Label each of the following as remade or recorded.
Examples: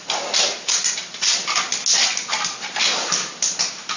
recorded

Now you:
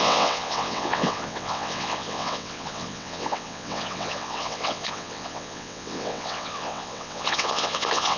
remade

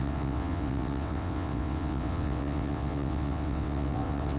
remade